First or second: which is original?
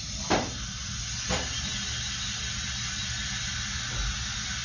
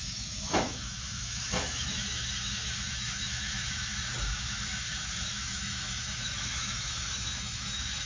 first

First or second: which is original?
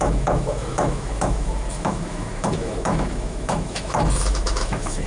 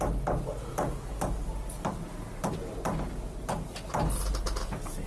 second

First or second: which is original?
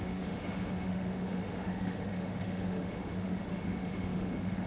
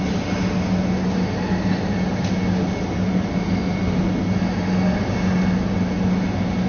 second